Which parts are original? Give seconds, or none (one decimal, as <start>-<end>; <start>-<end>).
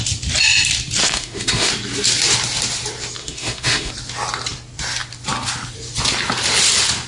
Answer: 0.0-1.0; 1.7-3.2; 3.9-7.1